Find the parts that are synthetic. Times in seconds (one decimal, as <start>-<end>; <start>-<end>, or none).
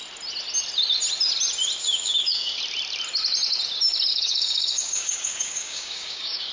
1.8-2.6; 4.1-6.5